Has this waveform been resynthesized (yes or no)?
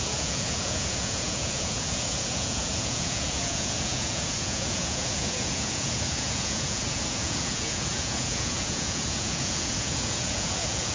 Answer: yes